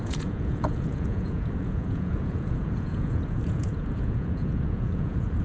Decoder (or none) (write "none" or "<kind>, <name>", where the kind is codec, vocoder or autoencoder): vocoder, Vocos